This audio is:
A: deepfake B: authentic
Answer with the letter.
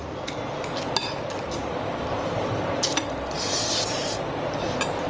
B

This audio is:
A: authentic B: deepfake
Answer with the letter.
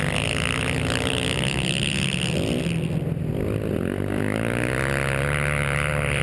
A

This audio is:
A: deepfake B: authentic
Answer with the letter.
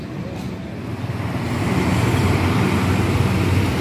B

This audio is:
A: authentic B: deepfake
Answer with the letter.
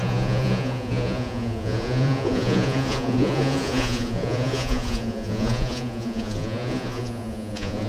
B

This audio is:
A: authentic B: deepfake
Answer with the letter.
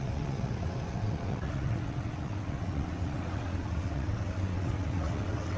B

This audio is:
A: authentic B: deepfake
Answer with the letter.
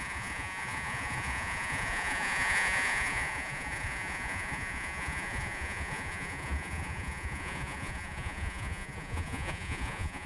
B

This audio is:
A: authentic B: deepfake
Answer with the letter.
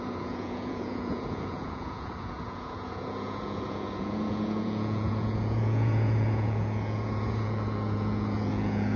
B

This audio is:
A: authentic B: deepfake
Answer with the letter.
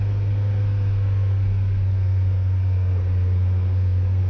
B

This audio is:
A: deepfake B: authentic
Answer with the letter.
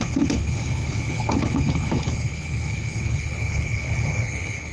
A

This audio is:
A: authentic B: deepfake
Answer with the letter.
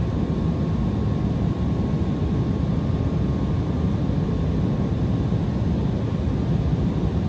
A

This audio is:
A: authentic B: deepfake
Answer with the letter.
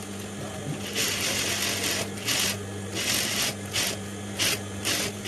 A